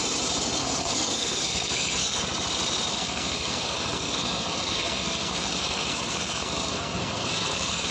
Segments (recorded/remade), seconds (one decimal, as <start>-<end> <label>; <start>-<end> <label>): 0.0-0.6 recorded; 0.6-2.2 remade; 2.2-2.9 recorded; 2.9-7.9 remade

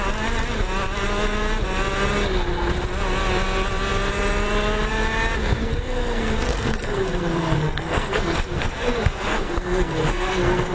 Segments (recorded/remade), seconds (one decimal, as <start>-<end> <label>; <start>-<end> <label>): 0.0-5.4 recorded; 5.4-10.7 remade

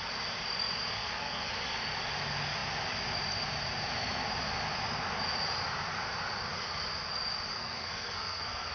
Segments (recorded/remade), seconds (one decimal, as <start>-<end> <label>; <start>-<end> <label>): 0.0-0.9 recorded; 0.9-1.5 remade; 1.5-7.5 recorded; 7.5-8.7 remade